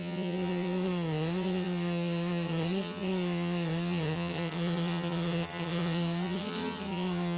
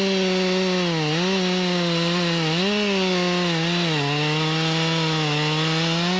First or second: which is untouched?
second